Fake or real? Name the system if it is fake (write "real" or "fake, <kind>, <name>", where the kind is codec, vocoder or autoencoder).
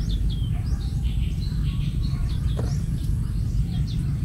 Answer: fake, vocoder, BigVGAN v2